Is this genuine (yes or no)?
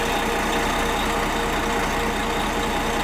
yes